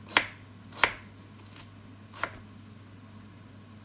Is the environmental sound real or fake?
real